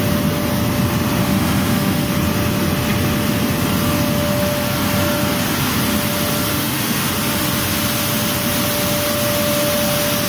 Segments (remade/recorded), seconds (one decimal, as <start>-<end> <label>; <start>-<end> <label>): 0.0-1.2 recorded; 1.2-2.1 remade; 2.1-6.5 recorded; 6.5-7.1 remade; 7.1-10.3 recorded